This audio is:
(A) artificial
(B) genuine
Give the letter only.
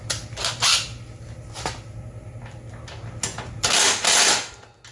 B